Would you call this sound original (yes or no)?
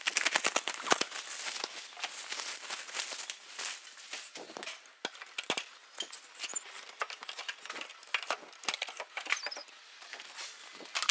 yes